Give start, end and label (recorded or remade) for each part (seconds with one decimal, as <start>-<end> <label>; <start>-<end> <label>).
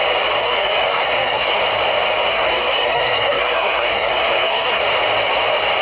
0.0-0.4 recorded; 0.4-1.6 remade; 1.6-2.3 recorded; 2.3-4.8 remade; 4.8-5.8 recorded